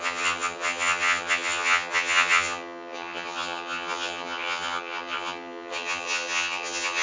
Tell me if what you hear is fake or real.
fake